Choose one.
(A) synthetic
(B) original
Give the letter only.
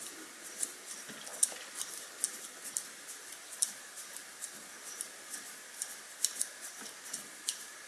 A